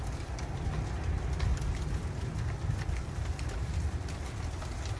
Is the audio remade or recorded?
recorded